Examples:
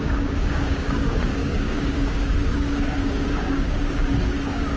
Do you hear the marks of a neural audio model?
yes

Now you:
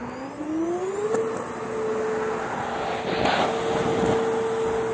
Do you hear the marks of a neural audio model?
no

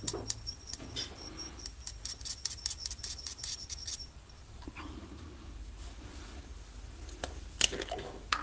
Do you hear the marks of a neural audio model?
no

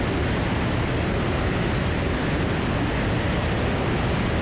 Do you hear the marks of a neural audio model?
no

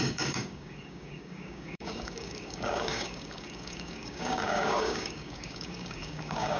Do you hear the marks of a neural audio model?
yes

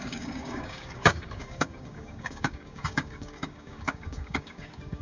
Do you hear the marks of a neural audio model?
yes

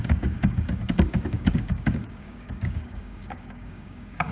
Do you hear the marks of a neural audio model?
yes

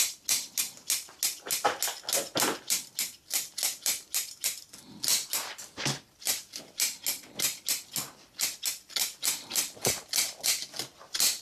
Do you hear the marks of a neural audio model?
no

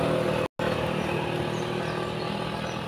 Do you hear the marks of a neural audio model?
no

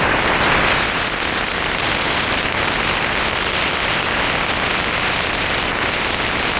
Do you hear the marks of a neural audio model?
no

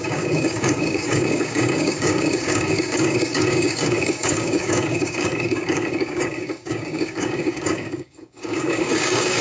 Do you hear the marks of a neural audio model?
yes